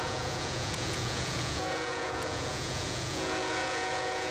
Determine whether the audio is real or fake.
fake